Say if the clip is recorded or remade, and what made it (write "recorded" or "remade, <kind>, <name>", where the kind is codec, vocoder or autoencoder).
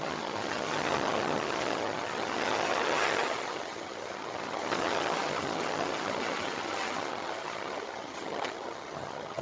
remade, vocoder, HiFi-GAN